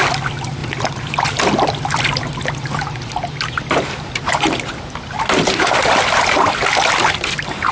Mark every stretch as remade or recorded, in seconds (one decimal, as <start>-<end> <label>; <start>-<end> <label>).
0.0-0.6 recorded; 0.6-4.3 remade; 4.3-7.7 recorded